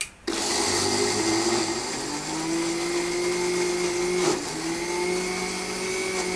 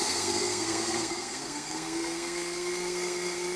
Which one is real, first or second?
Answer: first